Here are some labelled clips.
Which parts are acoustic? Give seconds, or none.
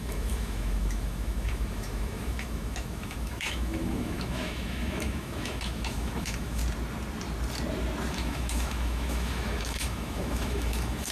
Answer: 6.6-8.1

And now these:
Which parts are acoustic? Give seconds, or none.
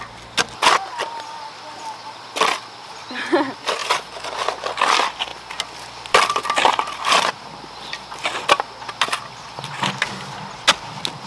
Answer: 0.0-11.3